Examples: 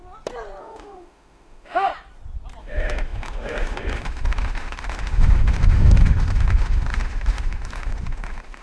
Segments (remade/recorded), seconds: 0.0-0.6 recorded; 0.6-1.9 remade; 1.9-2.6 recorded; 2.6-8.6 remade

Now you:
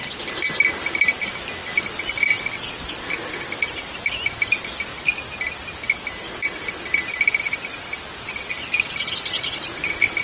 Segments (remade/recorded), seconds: 0.0-10.2 recorded

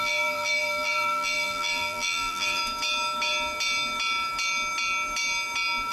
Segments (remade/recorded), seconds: 0.0-2.6 remade; 2.6-5.9 recorded